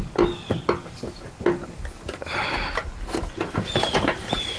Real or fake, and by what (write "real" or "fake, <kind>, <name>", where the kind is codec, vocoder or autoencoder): real